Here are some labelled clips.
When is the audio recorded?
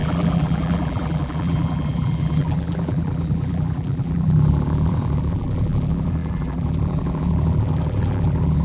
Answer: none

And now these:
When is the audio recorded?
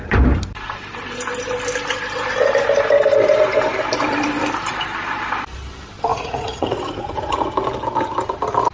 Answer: 0.0-6.1; 7.5-8.7